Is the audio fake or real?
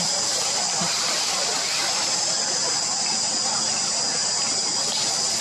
real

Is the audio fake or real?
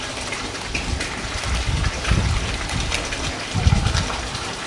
real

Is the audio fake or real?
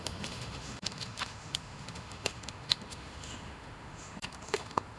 fake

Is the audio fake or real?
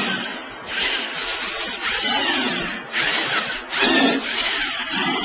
real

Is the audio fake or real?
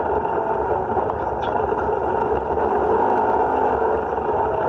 real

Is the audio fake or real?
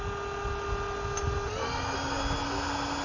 real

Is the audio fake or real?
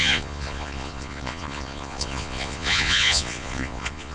fake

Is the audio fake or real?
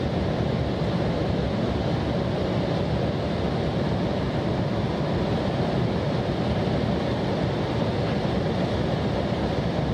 fake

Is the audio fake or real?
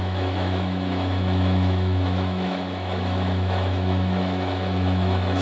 fake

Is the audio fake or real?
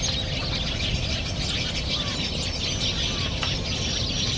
real